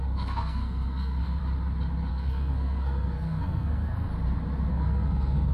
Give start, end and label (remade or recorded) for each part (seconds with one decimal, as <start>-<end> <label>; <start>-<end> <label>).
0.0-1.4 remade; 1.4-2.1 recorded; 2.1-4.1 remade; 4.1-4.7 recorded; 4.7-5.5 remade